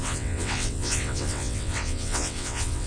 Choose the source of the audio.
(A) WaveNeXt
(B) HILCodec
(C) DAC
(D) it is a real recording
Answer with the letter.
A